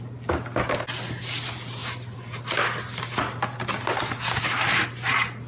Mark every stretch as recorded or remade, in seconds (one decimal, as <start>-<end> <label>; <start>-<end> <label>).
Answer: 0.0-1.8 recorded; 1.8-2.4 remade; 2.4-3.5 recorded; 3.5-4.4 remade; 4.4-5.5 recorded